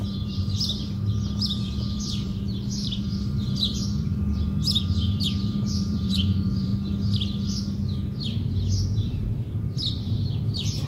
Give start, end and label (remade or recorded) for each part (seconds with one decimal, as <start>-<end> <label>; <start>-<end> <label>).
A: 0.0-6.7 remade; 6.7-10.0 recorded; 10.0-10.9 remade